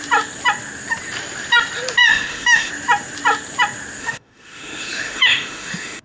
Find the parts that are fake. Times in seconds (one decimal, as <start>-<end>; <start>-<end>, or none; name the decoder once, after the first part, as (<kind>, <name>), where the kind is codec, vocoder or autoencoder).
2.1-2.7 (autoencoder, DAC-VAE); 4.0-6.0